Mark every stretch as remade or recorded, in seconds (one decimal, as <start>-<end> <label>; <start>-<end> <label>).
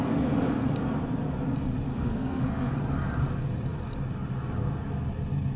0.0-1.9 recorded; 1.9-2.7 remade; 2.7-5.6 recorded